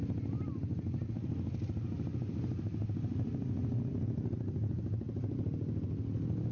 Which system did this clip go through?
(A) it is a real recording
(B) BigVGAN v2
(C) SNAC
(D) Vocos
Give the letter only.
A